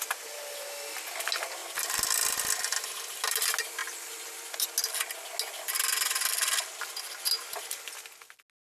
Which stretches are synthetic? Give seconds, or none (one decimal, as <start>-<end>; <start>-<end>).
none